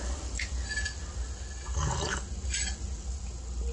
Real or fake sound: real